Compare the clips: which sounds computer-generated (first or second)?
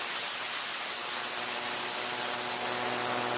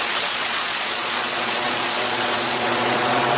second